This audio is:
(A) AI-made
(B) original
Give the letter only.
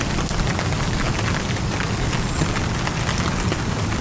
B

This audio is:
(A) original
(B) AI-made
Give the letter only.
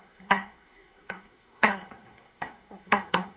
B